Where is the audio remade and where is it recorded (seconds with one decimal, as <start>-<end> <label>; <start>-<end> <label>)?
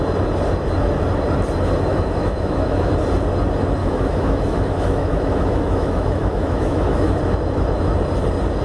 0.0-1.9 recorded; 1.9-2.9 remade; 2.9-3.8 recorded; 3.8-7.2 remade; 7.2-8.6 recorded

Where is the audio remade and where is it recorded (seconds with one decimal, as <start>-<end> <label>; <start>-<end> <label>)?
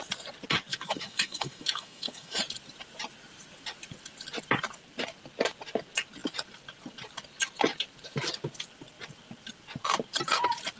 0.0-0.7 recorded; 0.7-2.4 remade; 2.4-10.8 recorded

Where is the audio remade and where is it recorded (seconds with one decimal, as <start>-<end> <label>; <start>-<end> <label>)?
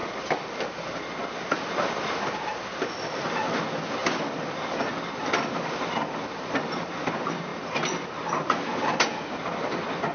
0.0-10.1 recorded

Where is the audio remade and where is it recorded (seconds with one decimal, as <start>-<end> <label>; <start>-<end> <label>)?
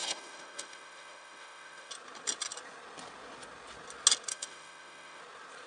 0.0-1.9 remade; 1.9-4.3 recorded; 4.3-5.2 remade; 5.2-5.7 recorded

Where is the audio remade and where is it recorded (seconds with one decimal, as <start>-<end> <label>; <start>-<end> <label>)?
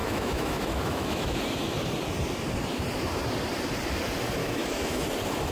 0.0-1.4 remade; 1.4-4.4 recorded; 4.4-5.0 remade; 5.0-5.5 recorded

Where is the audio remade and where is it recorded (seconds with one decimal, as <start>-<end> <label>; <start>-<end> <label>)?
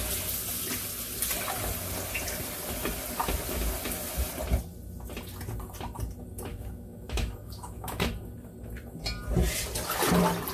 0.0-6.5 recorded; 6.5-8.1 remade; 8.1-10.5 recorded